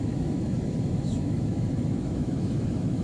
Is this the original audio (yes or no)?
no